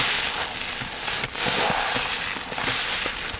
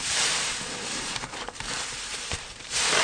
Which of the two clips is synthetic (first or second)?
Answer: second